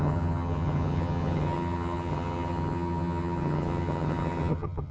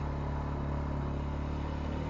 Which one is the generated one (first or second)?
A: first